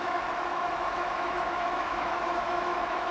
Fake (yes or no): yes